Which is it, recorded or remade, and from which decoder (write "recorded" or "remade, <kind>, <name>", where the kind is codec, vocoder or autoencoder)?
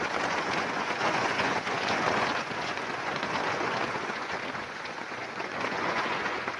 remade, vocoder, Vocos